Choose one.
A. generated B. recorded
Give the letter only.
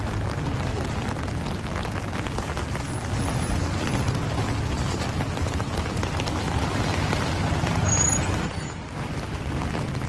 B